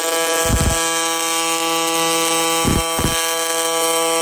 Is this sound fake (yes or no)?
no